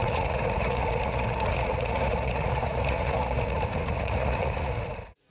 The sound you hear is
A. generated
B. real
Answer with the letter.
A